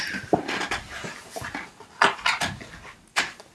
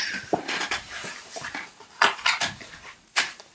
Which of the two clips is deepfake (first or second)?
second